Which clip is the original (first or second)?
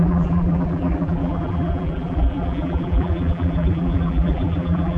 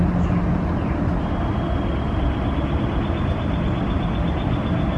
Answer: second